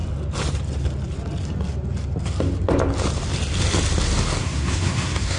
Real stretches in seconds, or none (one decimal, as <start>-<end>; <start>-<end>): 0.0-4.4